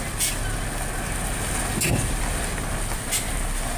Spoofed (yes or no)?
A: no